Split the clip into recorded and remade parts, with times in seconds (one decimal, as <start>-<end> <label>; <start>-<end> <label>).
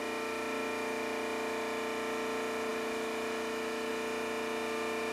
0.0-2.7 recorded; 2.7-3.9 remade; 3.9-5.1 recorded